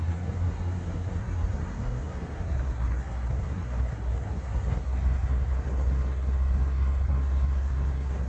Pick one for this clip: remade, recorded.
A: remade